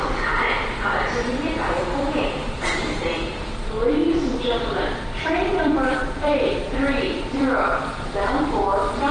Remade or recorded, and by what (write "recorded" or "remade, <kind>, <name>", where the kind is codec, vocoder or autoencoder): remade, vocoder, BigVGAN v2